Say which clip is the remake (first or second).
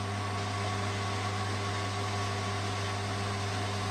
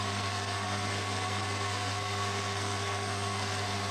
second